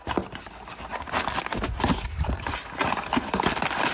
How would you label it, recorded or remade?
recorded